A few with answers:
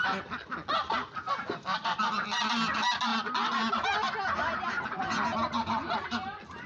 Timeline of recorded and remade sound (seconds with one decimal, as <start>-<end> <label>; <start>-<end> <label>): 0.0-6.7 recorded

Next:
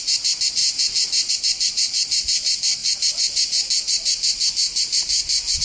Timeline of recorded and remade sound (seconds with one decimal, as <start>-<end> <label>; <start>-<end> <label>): 0.0-5.6 recorded

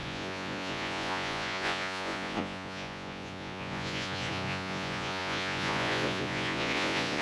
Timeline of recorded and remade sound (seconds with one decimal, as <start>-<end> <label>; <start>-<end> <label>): 0.0-7.2 remade

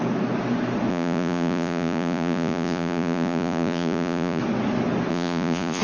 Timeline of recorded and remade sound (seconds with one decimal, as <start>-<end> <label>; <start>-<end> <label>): 0.0-0.9 recorded; 0.9-4.4 remade; 4.4-5.1 recorded; 5.1-5.8 remade

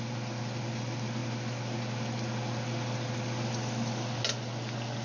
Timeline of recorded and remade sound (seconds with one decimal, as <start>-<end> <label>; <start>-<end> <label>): 0.0-5.0 recorded